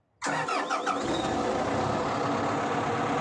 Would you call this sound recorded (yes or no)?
yes